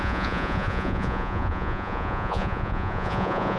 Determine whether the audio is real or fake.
fake